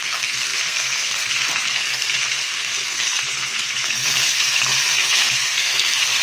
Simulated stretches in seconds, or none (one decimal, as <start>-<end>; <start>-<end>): 0.0-6.2